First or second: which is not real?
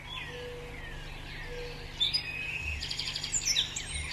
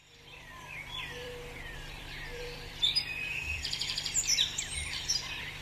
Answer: second